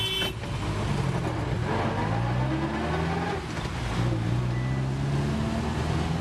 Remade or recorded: recorded